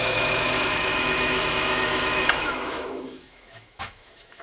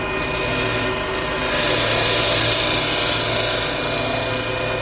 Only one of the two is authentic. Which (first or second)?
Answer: second